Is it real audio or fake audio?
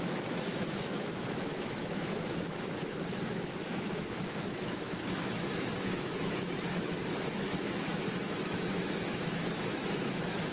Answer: fake